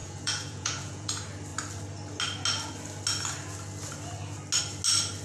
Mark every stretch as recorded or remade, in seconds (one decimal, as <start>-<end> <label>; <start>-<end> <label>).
0.0-1.1 remade; 1.1-5.2 recorded